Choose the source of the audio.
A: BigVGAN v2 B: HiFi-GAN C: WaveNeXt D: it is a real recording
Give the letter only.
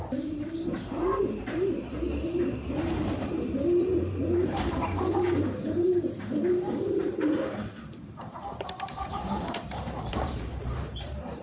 A